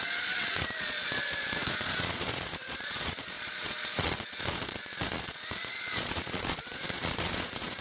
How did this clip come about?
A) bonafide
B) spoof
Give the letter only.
B